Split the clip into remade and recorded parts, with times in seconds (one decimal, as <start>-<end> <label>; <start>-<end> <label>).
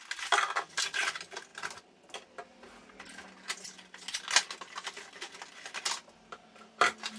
0.0-7.2 recorded